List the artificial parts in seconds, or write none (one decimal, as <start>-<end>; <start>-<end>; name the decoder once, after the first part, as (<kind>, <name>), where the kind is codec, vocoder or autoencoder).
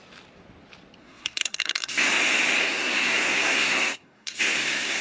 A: 1.0-2.1 (codec, SNAC); 2.6-5.0